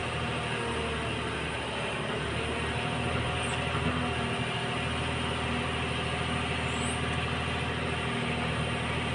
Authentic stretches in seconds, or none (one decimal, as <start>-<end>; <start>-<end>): 0.0-9.1